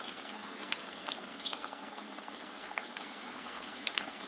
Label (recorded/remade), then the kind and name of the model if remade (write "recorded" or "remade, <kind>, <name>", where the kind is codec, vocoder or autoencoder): remade, codec, SNAC